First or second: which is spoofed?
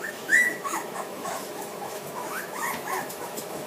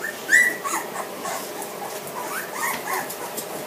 first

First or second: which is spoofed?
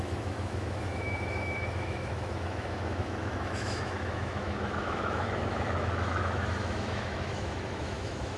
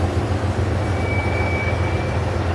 first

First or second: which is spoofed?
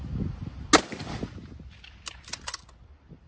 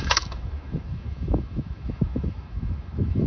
second